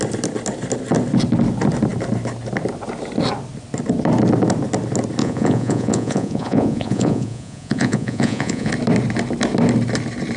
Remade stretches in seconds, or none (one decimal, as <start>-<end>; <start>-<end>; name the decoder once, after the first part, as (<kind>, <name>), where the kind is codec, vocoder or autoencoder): 5.2-8.7 (vocoder, Vocos)